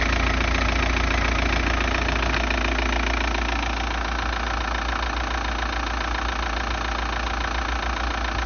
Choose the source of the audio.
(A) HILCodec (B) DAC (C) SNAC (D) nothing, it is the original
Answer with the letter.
D